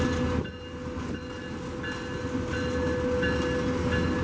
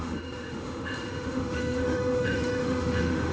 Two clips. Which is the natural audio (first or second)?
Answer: first